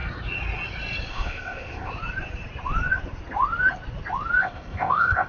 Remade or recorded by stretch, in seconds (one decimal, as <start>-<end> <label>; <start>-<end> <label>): 0.0-1.1 recorded; 1.1-1.9 remade; 1.9-4.4 recorded; 4.4-5.3 remade